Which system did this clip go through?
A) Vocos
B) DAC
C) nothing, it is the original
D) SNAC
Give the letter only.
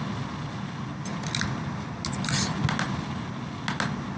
C